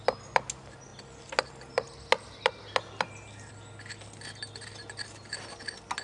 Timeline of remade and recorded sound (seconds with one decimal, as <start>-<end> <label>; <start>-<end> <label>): 0.0-6.0 recorded